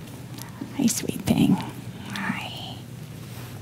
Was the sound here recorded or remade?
recorded